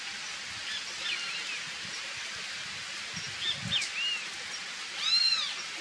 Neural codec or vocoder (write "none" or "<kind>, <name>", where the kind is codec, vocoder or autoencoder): none